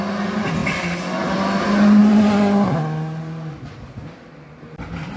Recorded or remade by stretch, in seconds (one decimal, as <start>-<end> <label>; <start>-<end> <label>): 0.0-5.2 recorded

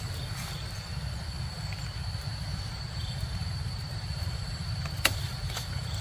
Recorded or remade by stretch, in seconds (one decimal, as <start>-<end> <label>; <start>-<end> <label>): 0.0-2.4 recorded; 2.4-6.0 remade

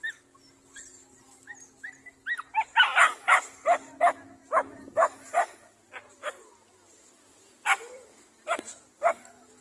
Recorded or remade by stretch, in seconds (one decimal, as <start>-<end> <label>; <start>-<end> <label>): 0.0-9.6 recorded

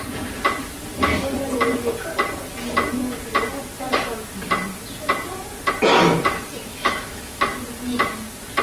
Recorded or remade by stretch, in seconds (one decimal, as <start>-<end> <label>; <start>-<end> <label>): 0.0-6.7 recorded; 6.7-7.4 remade; 7.4-8.6 recorded